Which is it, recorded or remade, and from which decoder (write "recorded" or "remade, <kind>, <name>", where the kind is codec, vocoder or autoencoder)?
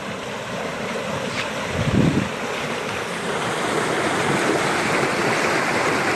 remade, vocoder, BigVGAN v2